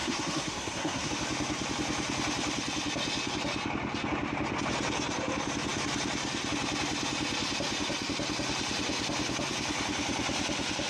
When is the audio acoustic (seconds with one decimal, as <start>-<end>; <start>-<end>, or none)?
1.1-10.9